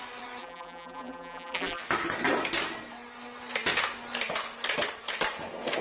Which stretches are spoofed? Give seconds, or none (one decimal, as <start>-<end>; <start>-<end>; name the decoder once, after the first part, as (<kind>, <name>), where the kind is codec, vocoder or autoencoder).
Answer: 0.4-1.8 (vocoder, BigVGAN v2)